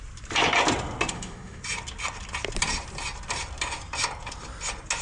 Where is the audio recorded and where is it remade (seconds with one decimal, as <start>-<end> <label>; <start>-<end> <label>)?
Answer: 0.0-1.1 recorded; 1.1-1.6 remade; 1.6-5.0 recorded